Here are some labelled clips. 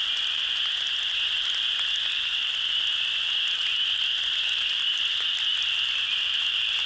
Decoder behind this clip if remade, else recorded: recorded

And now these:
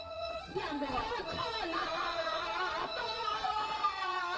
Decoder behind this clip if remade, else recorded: remade, vocoder, Vocos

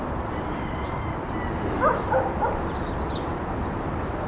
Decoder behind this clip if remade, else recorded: recorded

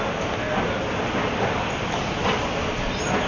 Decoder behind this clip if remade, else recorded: recorded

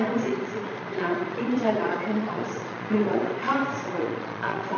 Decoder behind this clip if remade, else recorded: remade, vocoder, Vocos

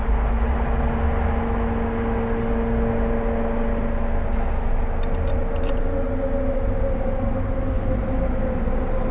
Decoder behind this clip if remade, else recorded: recorded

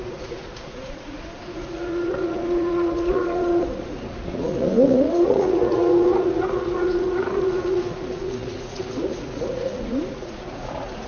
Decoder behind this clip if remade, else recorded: remade, vocoder, Vocos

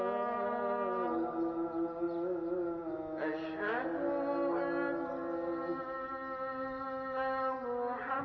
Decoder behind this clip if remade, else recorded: recorded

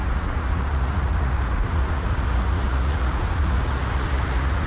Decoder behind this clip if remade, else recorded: remade, vocoder, Vocos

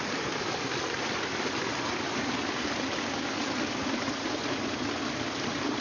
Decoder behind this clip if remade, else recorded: recorded